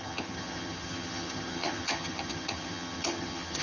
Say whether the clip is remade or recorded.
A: remade